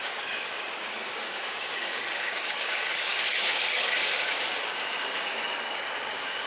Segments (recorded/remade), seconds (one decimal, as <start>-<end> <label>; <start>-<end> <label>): 0.0-6.5 remade